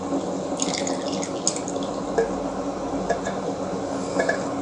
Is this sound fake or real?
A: real